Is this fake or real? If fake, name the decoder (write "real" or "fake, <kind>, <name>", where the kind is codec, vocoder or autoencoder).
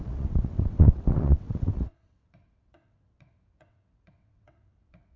fake, vocoder, WaveNeXt